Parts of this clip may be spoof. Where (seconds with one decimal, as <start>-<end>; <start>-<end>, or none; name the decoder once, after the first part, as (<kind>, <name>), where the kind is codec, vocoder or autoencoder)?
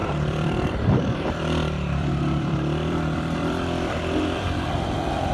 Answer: 0.0-5.3 (vocoder, BigVGAN v2)